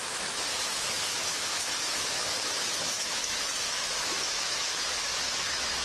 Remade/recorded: remade